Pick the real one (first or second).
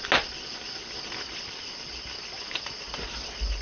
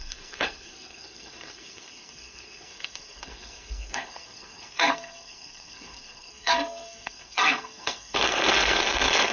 first